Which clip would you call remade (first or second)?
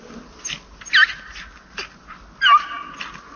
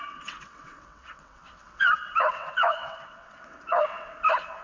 second